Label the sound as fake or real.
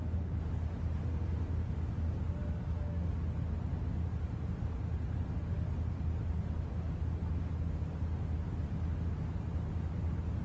real